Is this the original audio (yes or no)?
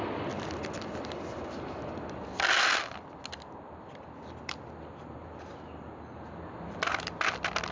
yes